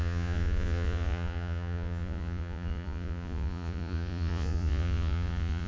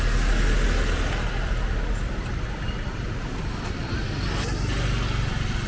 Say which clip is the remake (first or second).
first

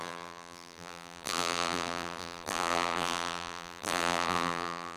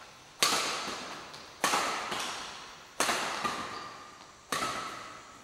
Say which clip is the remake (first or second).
first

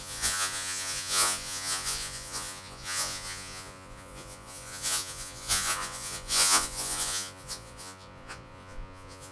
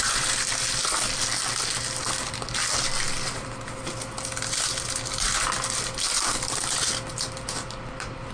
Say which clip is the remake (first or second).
first